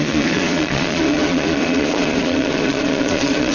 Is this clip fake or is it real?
fake